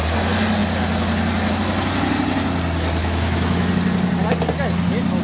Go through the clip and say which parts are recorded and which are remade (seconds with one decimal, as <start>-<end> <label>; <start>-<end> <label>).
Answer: 0.0-3.0 recorded; 3.0-3.7 remade; 3.7-5.2 recorded